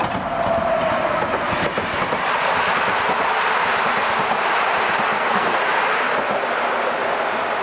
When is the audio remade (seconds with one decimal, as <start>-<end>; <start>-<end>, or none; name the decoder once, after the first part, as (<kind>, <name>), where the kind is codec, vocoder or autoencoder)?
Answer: 5.1-5.6 (codec, SNAC)